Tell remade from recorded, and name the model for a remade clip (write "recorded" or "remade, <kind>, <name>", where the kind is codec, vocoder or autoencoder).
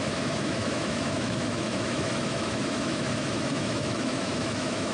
remade, autoencoder, DAC-VAE